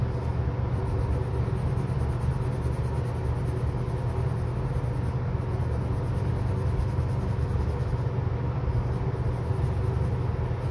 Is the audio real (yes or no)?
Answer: yes